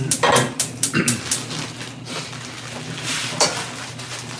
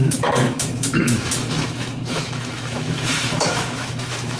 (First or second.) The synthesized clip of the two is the second